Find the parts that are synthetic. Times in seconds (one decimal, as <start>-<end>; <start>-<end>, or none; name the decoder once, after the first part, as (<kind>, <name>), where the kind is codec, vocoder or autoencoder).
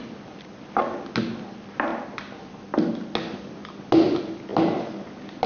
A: none